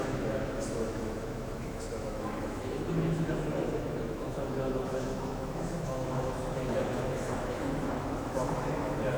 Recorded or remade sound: remade